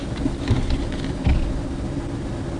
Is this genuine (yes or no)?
yes